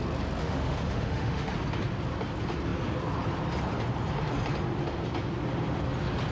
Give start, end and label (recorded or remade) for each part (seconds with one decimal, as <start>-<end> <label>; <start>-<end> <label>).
0.0-0.4 recorded; 0.4-1.5 remade; 1.5-6.3 recorded